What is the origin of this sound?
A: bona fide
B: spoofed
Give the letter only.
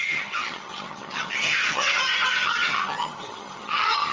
B